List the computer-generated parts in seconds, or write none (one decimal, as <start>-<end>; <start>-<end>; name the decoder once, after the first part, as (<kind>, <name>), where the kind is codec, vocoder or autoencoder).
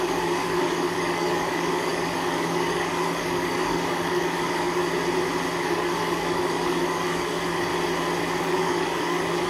0.0-4.8 (codec, DAC); 5.6-7.7; 8.4-9.5